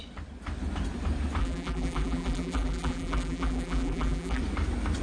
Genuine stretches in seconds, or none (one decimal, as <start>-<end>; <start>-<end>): 0.0-1.4; 4.4-5.0